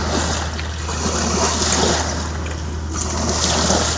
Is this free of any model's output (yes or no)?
yes